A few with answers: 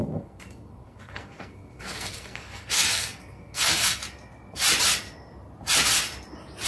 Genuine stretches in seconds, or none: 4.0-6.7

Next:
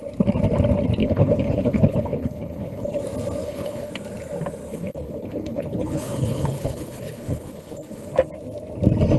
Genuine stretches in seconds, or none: 0.0-1.0; 3.0-3.4; 3.9-4.7; 8.1-9.2

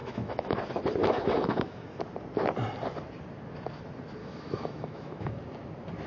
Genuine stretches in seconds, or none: 0.6-1.0; 2.0-4.2; 5.4-6.1

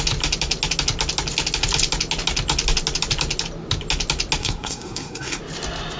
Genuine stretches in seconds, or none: 0.0-4.4; 5.4-6.0

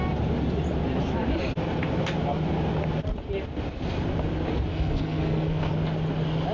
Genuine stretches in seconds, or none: 0.0-4.7; 5.7-6.5